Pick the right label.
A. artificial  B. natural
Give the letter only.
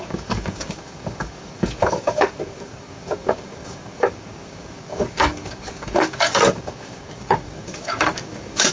A